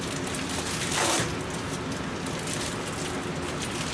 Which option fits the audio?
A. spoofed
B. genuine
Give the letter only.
B